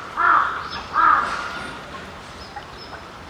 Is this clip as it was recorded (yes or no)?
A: yes